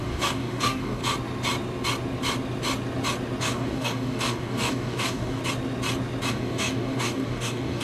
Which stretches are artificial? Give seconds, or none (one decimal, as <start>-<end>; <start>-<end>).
0.0-1.0; 3.4-5.4; 6.3-7.8